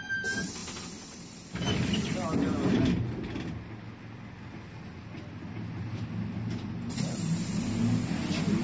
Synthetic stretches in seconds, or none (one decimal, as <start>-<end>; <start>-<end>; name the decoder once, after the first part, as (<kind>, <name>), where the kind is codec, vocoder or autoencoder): none